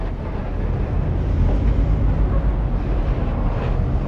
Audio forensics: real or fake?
real